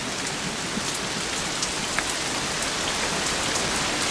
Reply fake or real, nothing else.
real